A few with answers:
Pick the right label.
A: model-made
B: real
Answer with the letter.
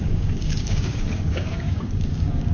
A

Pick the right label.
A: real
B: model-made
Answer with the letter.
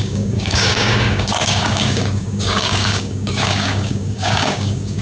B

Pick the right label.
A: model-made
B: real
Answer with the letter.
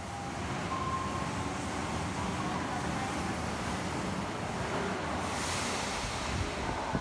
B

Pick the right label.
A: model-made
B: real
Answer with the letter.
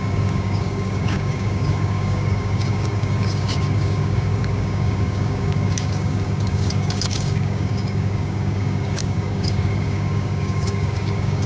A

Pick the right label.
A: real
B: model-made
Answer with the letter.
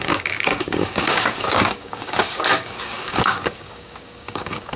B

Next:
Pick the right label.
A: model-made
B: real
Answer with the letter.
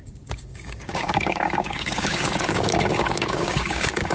A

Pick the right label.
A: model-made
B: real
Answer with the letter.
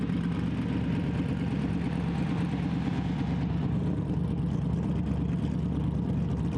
B